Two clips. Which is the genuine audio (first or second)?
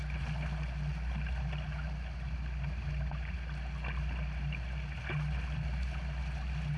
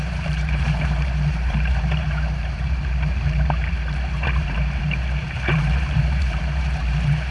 first